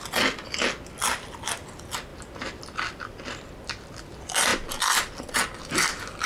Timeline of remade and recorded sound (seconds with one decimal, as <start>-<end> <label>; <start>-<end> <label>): 0.0-6.3 recorded